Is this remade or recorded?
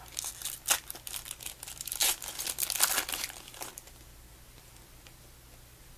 recorded